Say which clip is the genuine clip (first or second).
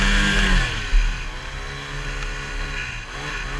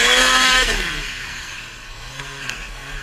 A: first